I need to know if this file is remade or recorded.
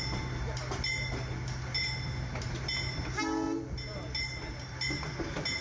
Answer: recorded